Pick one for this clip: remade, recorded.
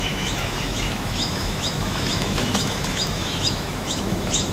remade